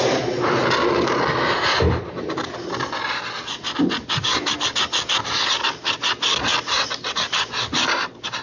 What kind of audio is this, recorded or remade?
recorded